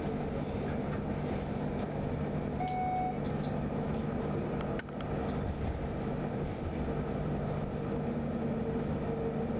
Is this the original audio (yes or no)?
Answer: yes